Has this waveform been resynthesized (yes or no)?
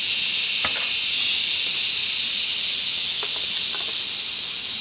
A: no